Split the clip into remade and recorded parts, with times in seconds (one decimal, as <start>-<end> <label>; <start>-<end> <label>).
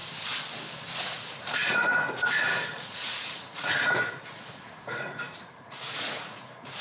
0.0-1.0 recorded; 1.0-6.8 remade